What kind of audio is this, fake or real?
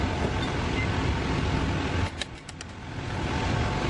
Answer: real